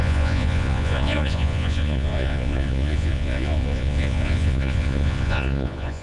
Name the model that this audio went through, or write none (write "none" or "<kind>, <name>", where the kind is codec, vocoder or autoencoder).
vocoder, Vocos